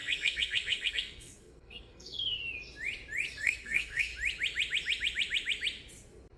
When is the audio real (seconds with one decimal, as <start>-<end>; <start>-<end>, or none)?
2.4-3.3; 4.1-6.4